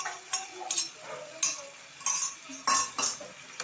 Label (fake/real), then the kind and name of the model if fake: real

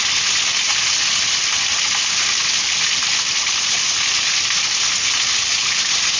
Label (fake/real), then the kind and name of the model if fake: real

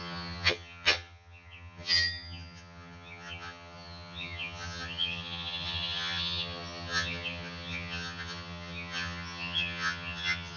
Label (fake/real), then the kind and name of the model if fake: fake, vocoder, HiFi-GAN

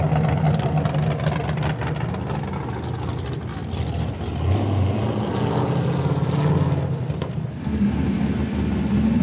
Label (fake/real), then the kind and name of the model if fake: real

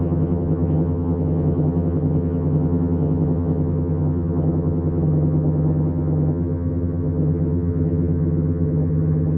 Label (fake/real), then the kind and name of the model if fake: fake, vocoder, HiFi-GAN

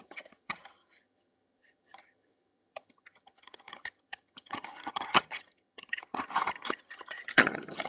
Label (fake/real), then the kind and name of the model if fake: fake, vocoder, HiFi-GAN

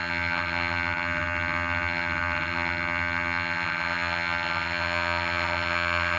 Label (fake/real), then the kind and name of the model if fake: fake, vocoder, HiFi-GAN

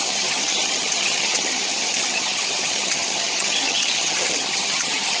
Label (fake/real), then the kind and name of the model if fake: fake, vocoder, HiFi-GAN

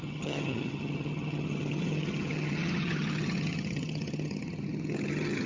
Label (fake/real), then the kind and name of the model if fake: fake, vocoder, HiFi-GAN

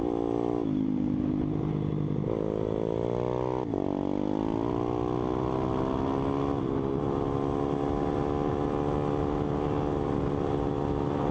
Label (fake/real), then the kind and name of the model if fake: real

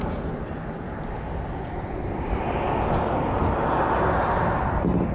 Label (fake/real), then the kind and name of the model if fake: real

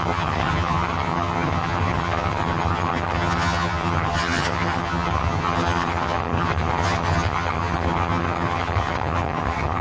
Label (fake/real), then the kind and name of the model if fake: fake, vocoder, HiFi-GAN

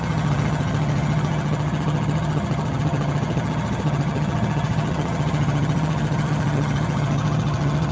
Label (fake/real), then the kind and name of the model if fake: fake, vocoder, HiFi-GAN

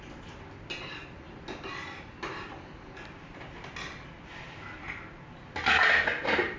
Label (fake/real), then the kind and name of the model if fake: real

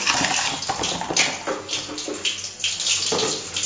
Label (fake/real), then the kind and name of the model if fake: real